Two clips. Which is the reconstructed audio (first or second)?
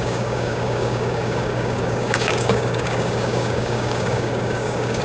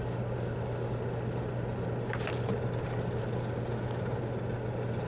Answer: first